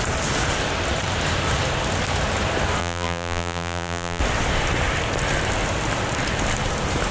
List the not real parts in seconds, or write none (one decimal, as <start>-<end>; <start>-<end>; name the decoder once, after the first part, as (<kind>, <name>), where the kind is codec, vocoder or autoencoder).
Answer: 2.8-4.2 (vocoder, BigVGAN v2)